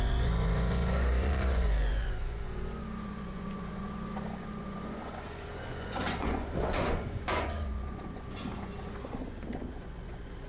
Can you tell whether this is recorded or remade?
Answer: remade